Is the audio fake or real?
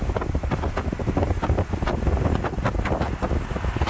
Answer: real